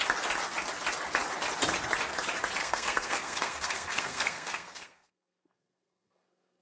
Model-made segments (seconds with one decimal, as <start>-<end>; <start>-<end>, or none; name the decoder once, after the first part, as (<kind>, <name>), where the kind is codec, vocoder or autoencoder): 2.6-6.6 (codec, SNAC)